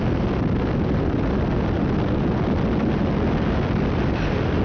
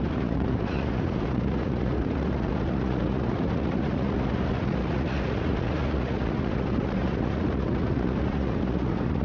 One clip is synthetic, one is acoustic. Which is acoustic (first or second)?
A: first